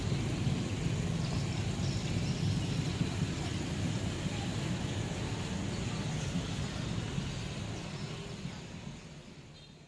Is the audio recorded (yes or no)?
yes